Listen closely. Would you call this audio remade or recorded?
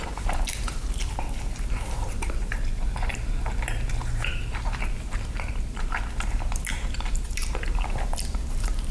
remade